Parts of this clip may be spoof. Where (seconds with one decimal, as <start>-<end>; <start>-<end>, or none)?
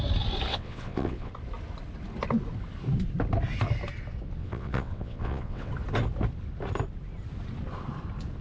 0.5-1.3; 4.4-5.7